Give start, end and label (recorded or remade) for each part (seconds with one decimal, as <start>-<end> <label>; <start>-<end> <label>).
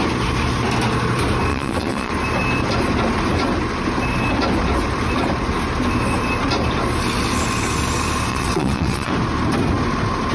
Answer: 0.0-1.5 recorded; 1.5-2.1 remade; 2.1-8.3 recorded; 8.3-9.1 remade; 9.1-10.3 recorded